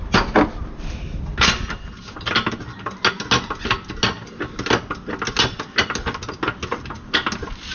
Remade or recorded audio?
recorded